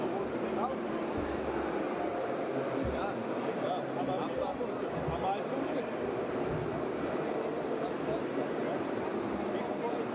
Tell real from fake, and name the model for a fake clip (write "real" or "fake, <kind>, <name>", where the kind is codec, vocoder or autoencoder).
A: real